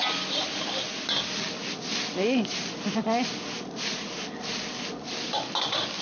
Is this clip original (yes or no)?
yes